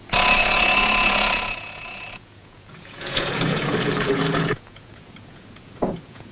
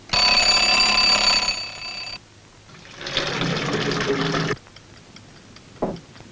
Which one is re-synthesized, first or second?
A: first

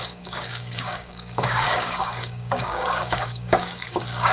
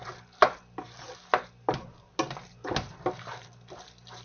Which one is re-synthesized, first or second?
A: first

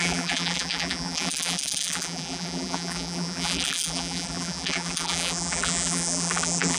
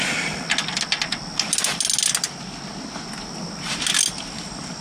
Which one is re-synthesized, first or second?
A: first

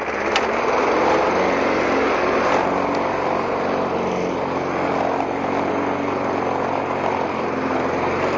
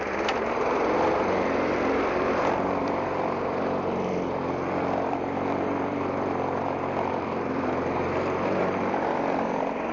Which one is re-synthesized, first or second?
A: second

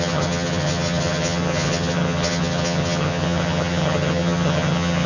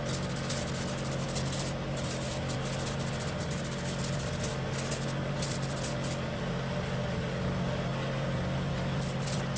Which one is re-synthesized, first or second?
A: first